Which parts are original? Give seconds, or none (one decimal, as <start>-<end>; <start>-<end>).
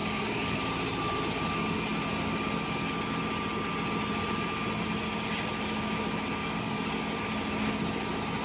0.6-6.4; 7.0-8.4